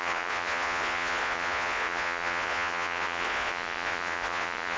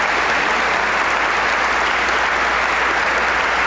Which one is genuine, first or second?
second